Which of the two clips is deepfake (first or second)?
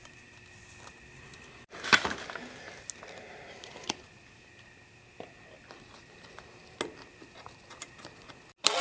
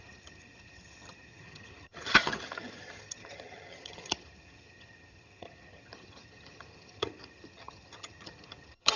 second